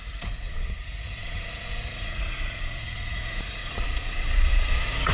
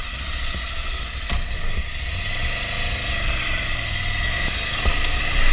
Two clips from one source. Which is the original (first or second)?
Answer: second